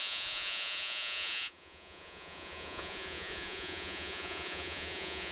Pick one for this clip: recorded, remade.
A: remade